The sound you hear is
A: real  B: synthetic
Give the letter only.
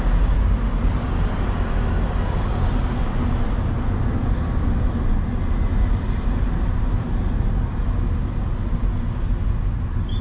A